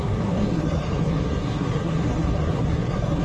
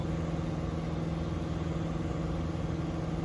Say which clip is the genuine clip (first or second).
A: second